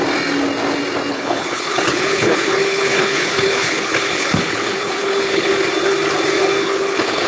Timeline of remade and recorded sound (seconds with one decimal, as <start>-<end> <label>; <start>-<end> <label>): 0.0-1.1 recorded; 1.1-5.5 remade; 5.5-6.6 recorded; 6.6-7.3 remade